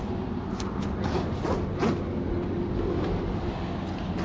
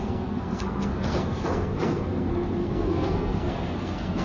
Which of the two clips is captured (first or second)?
first